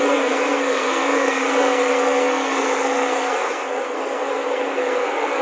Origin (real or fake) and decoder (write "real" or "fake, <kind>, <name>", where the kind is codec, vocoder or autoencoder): fake, codec, SNAC